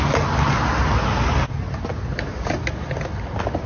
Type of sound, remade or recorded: recorded